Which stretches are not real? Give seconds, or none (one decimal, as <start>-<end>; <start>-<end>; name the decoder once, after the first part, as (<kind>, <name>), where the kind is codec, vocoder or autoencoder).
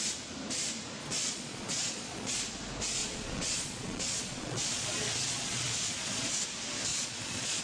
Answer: 1.0-2.4 (vocoder, Vocos); 3.0-6.3; 6.9-7.6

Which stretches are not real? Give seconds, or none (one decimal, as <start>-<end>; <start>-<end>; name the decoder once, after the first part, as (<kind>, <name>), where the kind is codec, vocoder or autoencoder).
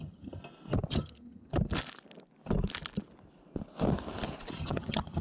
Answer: 0.0-0.4 (vocoder, HiFi-GAN); 0.9-1.5; 4.6-5.2